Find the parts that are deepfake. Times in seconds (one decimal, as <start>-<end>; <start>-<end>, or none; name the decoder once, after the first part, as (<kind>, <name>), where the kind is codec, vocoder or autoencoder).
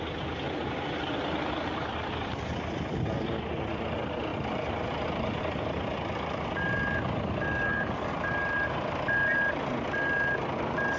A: none